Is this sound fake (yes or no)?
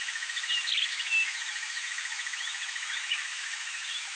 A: yes